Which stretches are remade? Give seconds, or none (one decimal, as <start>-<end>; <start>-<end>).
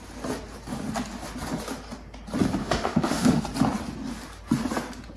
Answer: 2.6-3.4